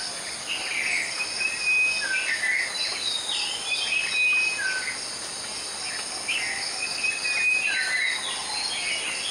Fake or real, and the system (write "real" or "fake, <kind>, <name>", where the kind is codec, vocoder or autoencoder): real